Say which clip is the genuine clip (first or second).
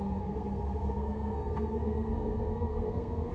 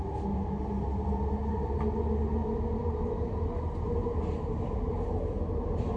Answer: second